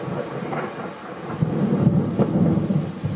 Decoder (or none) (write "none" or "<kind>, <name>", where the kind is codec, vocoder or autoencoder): none